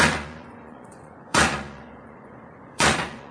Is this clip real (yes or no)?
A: no